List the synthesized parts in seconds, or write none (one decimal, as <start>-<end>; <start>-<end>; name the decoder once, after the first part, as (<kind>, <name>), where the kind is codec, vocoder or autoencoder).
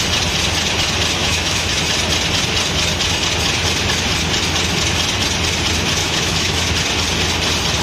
1.2-1.8 (autoencoder, DAC-VAE); 6.0-6.7